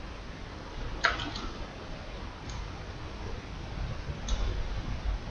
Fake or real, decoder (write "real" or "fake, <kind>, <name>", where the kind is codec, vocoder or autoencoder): real